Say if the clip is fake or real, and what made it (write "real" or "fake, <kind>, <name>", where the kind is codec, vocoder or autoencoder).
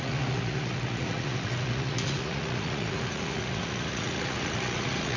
fake, vocoder, Vocos